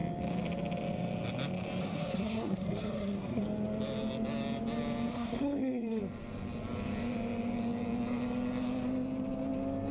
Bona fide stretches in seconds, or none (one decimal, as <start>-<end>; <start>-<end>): 0.0-1.8; 3.4-5.1; 6.0-9.9